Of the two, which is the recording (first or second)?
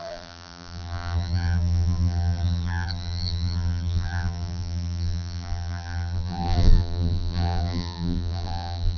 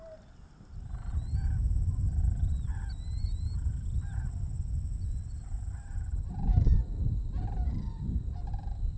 second